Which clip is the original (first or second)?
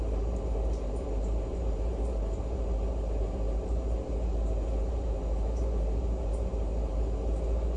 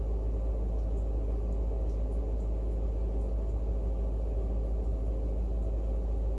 second